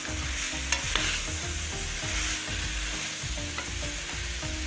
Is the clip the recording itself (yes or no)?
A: yes